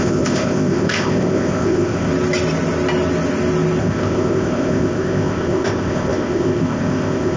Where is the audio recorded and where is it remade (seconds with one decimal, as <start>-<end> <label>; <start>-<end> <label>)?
0.0-2.1 remade; 2.1-3.8 recorded; 3.8-7.4 remade